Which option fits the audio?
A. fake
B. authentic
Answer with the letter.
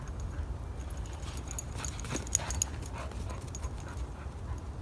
B